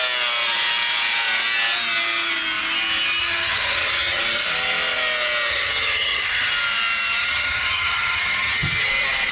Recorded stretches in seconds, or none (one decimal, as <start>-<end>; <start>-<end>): 0.0-3.2; 4.2-5.5; 6.5-7.2; 8.9-9.3